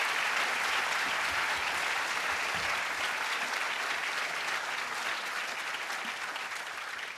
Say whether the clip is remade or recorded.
recorded